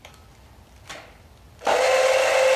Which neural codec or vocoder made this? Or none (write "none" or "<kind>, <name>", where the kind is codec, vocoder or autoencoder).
none